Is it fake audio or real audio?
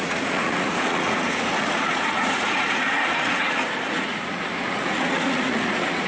fake